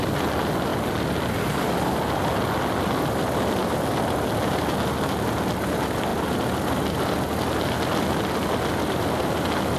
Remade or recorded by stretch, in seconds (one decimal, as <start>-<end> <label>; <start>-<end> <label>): 0.0-9.8 recorded